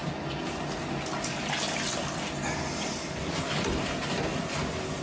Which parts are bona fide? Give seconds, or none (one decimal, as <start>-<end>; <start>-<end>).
0.0-5.0